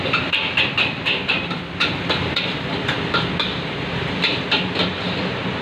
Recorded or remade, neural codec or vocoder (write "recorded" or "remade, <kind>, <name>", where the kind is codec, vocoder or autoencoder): remade, vocoder, BigVGAN v2